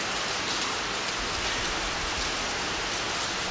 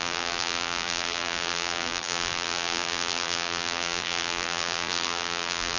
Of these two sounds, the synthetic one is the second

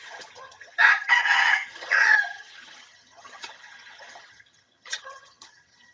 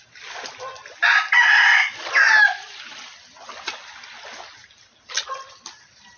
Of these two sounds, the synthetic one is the first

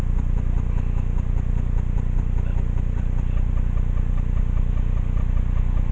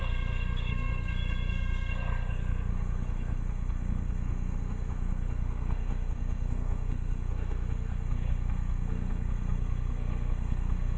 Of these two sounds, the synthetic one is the second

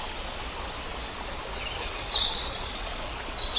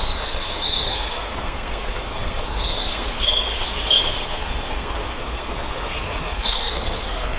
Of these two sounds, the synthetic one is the second